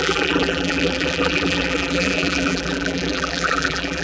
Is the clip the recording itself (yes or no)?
no